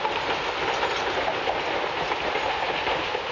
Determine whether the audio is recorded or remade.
recorded